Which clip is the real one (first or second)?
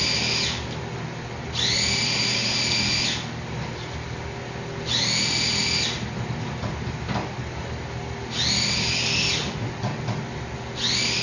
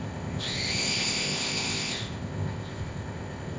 first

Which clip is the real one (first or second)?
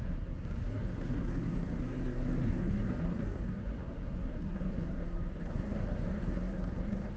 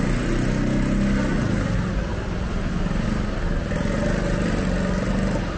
second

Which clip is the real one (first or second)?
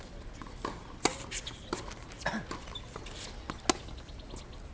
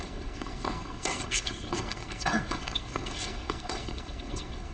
first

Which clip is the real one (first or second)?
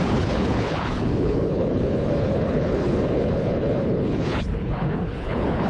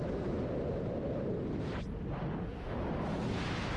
second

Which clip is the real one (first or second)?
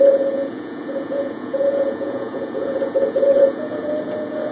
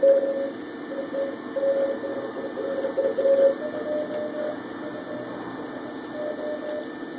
second